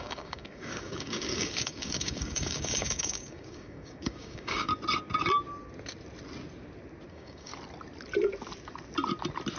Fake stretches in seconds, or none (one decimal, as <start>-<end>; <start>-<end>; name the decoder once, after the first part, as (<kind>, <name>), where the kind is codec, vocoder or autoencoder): 0.0-4.7 (codec, DAC); 7.1-7.5